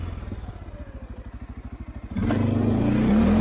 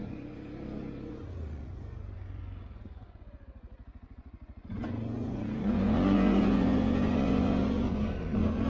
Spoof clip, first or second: second